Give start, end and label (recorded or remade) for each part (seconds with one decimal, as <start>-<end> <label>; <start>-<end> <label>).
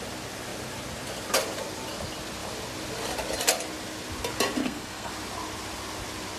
0.0-4.6 recorded; 4.6-5.1 remade; 5.1-6.4 recorded